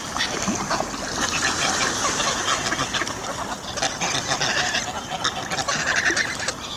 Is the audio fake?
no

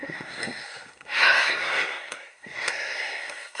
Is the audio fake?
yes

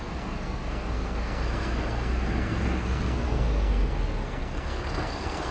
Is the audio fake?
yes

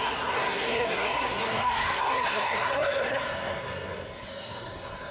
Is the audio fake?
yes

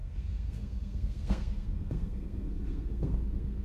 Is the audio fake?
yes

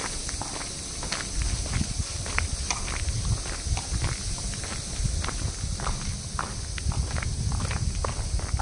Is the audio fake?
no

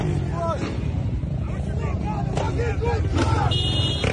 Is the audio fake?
no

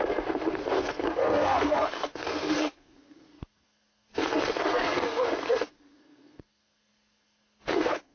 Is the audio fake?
yes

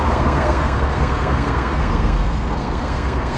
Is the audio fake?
yes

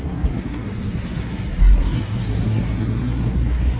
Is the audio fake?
yes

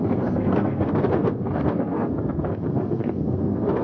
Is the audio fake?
yes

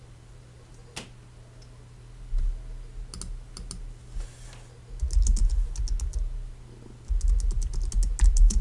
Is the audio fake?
no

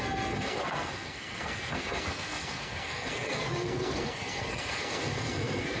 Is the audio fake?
yes